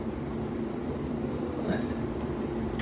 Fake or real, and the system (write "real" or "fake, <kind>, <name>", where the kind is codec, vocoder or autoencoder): real